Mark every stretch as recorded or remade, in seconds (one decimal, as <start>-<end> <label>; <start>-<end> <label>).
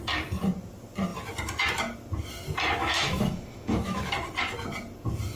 0.0-2.8 recorded; 2.8-4.1 remade; 4.1-5.4 recorded